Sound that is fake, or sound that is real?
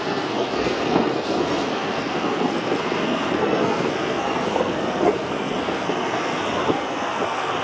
fake